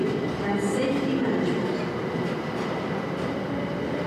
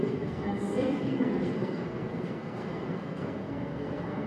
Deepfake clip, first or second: second